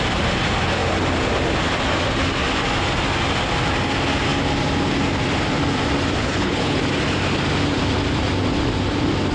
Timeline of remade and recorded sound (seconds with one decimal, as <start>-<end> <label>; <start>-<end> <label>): 0.0-6.2 recorded; 6.2-6.8 remade; 6.8-9.3 recorded